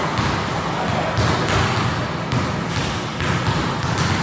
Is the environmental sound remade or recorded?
recorded